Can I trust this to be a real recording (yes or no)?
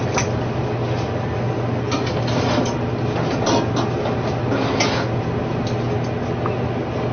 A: yes